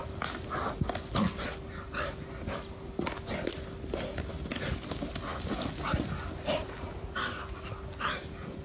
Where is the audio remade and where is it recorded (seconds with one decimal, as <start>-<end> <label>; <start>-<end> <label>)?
0.0-8.6 recorded